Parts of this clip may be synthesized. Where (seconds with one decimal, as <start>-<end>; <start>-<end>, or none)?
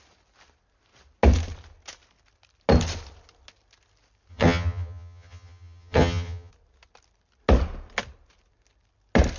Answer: 4.3-6.5